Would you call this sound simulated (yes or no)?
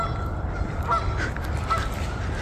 no